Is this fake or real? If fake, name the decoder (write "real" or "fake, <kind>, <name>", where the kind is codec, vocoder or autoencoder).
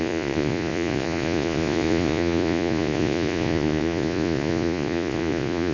fake, vocoder, Vocos